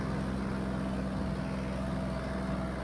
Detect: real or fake real